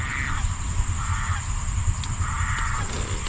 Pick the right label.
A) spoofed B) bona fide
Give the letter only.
B